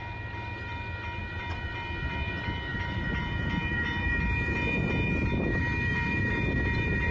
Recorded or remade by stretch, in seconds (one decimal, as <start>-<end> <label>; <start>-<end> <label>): 0.0-1.2 recorded; 1.2-2.3 remade; 2.3-2.7 recorded; 2.7-7.1 remade